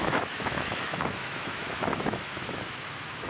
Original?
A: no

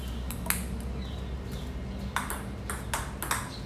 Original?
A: yes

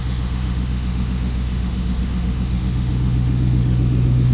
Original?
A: no